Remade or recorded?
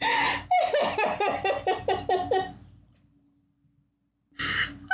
recorded